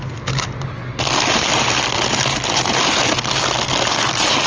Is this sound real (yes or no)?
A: yes